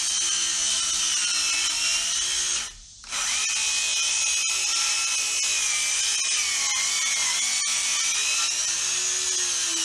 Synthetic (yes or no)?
no